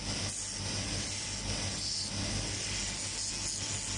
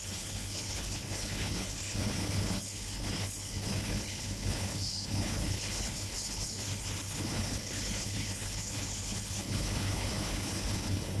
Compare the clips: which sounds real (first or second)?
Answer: first